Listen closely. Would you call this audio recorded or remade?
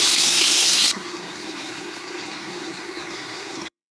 remade